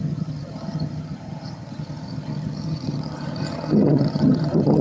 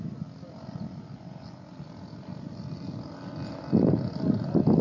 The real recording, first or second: second